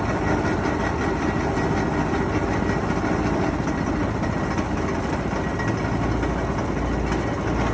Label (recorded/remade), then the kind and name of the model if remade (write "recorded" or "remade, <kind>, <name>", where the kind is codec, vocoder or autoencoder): recorded